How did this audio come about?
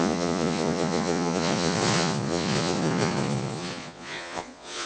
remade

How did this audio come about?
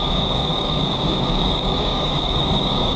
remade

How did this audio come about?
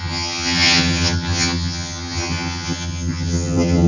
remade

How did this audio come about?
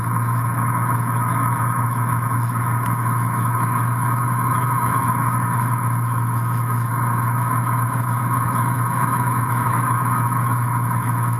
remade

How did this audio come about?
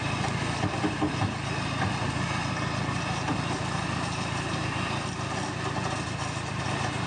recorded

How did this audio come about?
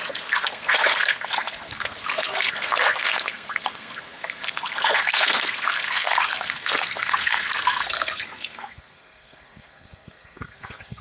remade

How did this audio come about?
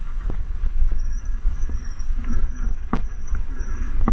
remade